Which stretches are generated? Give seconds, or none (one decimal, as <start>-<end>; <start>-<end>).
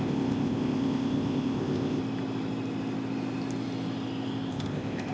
0.0-2.0; 4.5-5.1